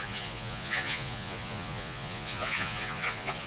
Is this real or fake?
fake